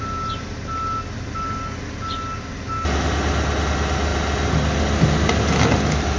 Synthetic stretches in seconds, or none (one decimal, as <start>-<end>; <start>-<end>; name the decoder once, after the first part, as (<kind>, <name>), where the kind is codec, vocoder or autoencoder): none